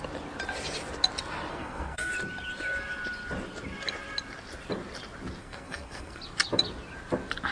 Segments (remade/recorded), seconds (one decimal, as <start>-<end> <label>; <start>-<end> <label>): 0.0-1.5 recorded; 1.5-2.1 remade; 2.1-5.4 recorded; 5.4-6.2 remade; 6.2-7.5 recorded